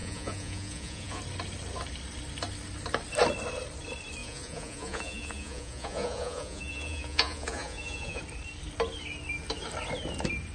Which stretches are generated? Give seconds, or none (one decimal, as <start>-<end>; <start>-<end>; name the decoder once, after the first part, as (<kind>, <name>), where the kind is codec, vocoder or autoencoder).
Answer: 0.0-1.2 (vocoder, Vocos); 4.2-8.2